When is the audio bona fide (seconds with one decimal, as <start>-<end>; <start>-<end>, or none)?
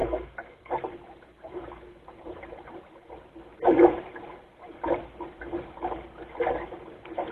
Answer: 0.7-7.3